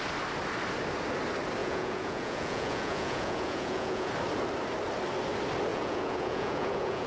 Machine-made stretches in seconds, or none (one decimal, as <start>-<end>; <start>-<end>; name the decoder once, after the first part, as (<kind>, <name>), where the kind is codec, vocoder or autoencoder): 1.6-4.1 (vocoder, Vocos); 5.7-7.1